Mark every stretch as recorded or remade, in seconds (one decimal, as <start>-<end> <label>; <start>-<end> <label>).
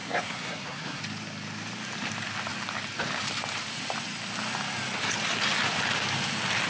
0.0-1.0 remade; 1.0-6.7 recorded